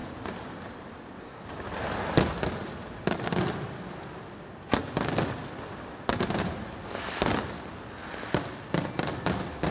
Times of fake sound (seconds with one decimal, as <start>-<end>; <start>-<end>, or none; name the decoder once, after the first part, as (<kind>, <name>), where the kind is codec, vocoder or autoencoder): none